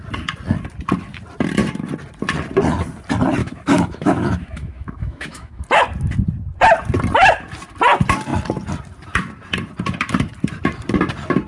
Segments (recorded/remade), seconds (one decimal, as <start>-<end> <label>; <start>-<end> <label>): 0.0-3.4 recorded; 3.4-5.6 remade; 5.6-11.5 recorded